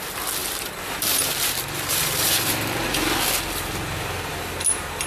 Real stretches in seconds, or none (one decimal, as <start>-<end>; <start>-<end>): 0.0-0.4; 3.2-5.1